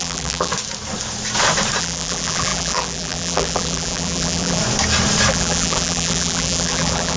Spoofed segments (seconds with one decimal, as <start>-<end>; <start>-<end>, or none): 0.0-0.5; 1.8-4.6; 5.3-7.2